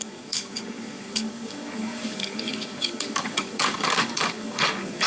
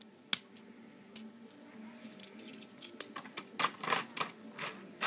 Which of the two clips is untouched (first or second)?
second